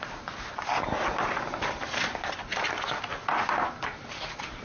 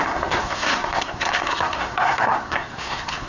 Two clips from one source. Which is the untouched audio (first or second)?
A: first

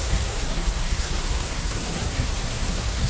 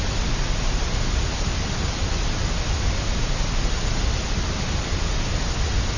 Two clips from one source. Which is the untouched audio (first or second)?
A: second